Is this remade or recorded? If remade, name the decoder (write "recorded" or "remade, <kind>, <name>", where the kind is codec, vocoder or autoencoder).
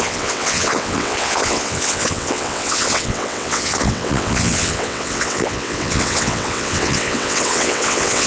remade, vocoder, WaveNeXt